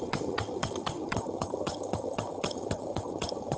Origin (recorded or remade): remade